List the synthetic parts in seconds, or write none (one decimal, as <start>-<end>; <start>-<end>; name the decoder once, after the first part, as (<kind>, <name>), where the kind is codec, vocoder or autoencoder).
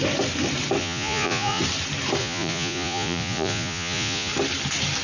0.8-1.6 (vocoder, Vocos); 2.2-4.3